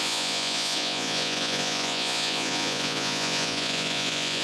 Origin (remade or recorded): remade